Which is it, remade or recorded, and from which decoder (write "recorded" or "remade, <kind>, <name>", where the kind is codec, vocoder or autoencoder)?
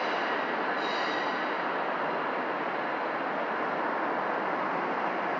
recorded